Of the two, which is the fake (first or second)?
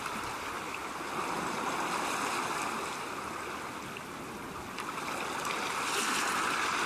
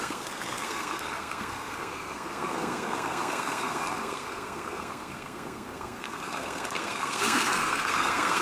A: second